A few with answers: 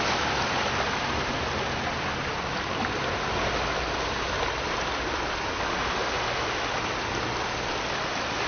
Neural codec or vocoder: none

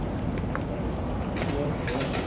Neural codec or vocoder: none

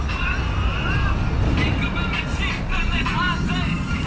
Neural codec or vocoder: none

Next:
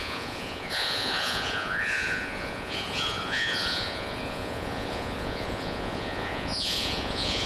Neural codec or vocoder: vocoder, Vocos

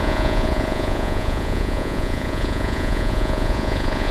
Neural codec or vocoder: vocoder, Vocos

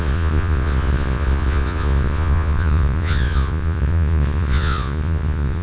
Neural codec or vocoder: vocoder, Vocos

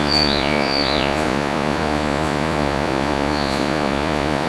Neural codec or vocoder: vocoder, Vocos